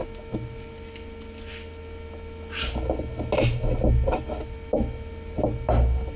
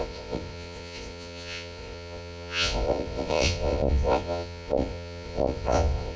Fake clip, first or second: second